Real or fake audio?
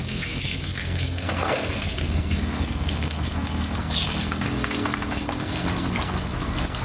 fake